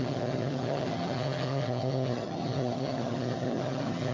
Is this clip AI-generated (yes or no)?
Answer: yes